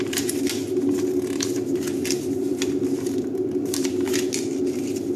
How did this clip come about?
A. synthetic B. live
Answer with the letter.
B